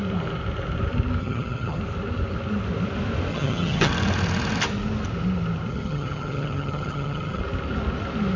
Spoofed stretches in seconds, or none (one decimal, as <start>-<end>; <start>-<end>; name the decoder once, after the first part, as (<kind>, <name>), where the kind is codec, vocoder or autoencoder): 1.2-1.8 (vocoder, HiFi-GAN); 3.3-3.9; 5.7-7.4